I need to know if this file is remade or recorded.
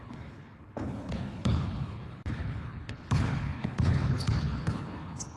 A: remade